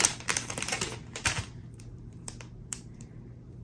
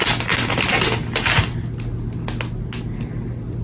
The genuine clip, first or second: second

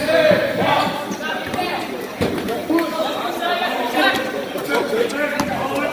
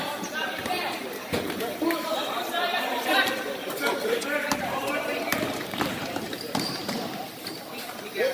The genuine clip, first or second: first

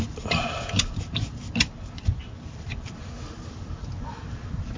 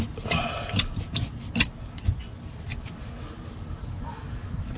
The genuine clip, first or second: second